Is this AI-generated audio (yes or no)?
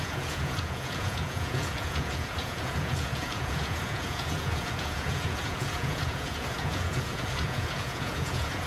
yes